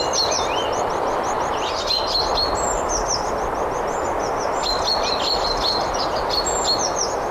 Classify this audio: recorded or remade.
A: recorded